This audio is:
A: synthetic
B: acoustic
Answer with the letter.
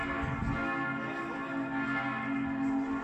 B